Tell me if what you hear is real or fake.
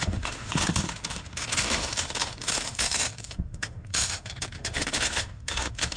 fake